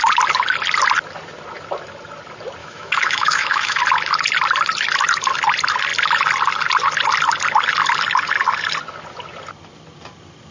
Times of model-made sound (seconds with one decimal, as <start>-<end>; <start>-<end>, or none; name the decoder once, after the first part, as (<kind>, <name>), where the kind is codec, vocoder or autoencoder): 2.6-3.8 (autoencoder, DAC-VAE)